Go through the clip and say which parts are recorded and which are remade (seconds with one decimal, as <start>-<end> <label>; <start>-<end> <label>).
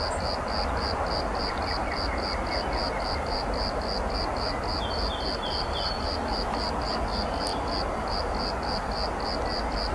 0.0-9.9 recorded